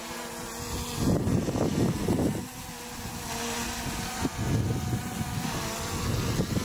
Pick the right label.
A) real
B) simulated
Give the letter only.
A